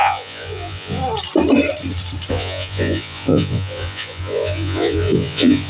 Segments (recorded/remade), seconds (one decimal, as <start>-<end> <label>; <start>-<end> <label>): 0.0-1.0 remade; 1.0-2.3 recorded; 2.3-5.7 remade